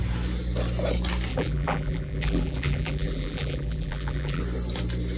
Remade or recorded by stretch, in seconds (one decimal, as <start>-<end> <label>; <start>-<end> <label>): 0.0-1.3 recorded; 1.3-4.4 remade; 4.4-5.2 recorded